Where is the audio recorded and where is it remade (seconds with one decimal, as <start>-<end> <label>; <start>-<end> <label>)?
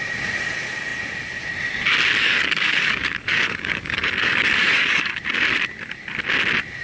0.0-2.2 recorded; 2.2-5.2 remade; 5.2-6.8 recorded